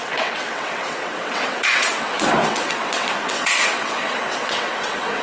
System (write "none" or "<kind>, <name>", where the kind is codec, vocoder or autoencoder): vocoder, WaveNeXt